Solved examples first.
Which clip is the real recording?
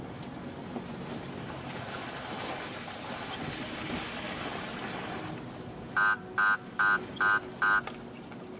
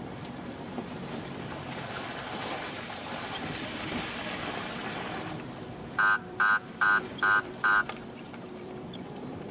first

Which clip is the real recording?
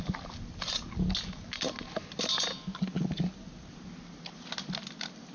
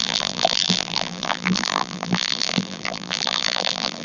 first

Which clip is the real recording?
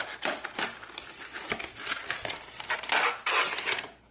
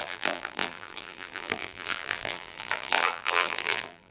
first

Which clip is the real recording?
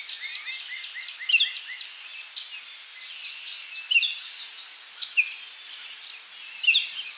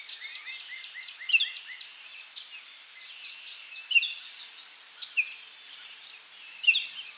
first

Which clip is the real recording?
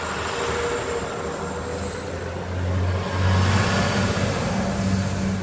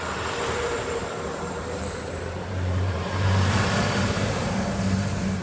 first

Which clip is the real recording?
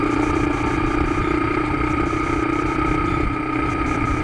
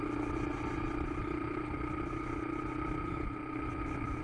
second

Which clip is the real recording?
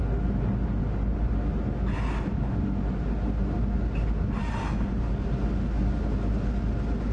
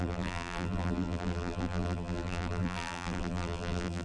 first